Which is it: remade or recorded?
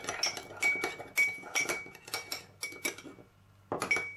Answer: recorded